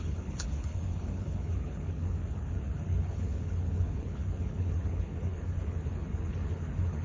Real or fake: fake